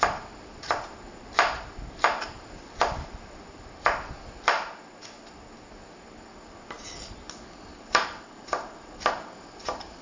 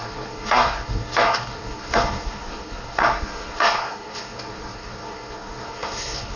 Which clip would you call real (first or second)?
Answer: first